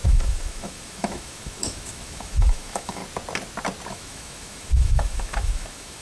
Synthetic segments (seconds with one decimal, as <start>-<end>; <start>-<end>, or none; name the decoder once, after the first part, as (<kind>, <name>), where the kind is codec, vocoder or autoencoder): 0.0-3.0 (autoencoder, DAC-VAE); 3.9-6.0